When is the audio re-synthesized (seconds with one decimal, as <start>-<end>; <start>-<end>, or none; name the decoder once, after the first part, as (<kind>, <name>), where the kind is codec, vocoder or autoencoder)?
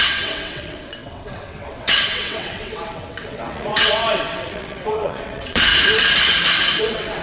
0.0-5.7 (vocoder, WaveNeXt); 6.8-7.2